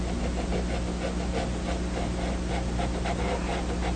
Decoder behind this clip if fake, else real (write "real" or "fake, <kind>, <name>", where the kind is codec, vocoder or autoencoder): real